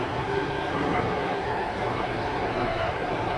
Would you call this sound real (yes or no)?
no